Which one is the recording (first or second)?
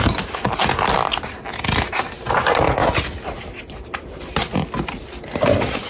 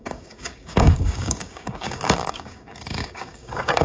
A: first